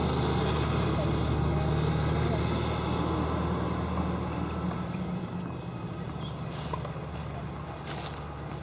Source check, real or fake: real